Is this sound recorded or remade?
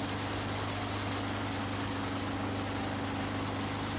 recorded